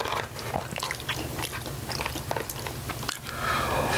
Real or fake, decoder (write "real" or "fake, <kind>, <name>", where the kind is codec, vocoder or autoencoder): real